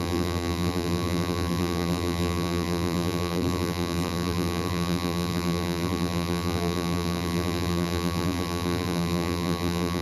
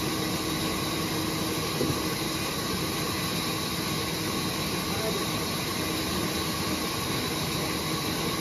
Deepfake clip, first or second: first